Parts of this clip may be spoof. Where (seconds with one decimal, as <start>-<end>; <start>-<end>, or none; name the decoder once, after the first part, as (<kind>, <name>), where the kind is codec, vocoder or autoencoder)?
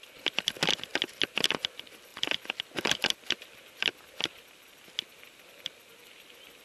none